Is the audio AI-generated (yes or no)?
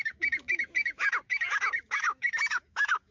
yes